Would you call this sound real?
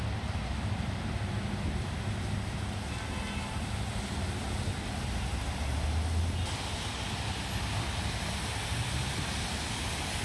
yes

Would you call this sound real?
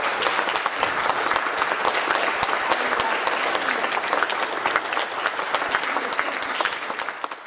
yes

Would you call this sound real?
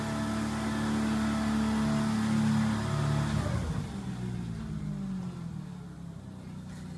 yes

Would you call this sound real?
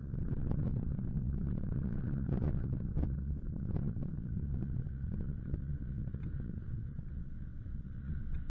no